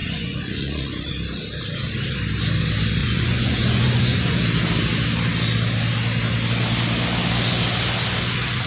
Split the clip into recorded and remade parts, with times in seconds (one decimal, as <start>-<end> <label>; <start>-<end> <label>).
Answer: 0.0-1.1 remade; 1.1-3.0 recorded; 3.0-4.4 remade; 4.4-8.7 recorded